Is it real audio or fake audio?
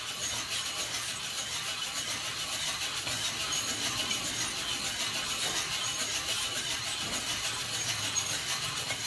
real